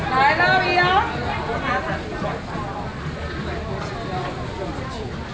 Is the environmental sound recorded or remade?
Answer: recorded